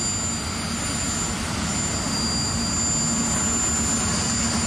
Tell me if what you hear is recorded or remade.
recorded